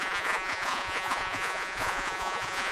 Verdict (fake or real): fake